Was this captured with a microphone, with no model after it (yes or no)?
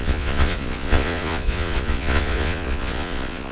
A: no